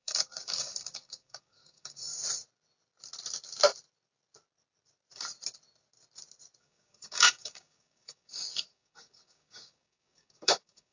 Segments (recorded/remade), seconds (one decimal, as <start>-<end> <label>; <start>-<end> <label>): 0.0-2.1 remade; 2.1-6.6 recorded; 6.6-10.9 remade